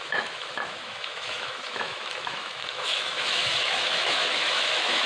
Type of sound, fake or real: fake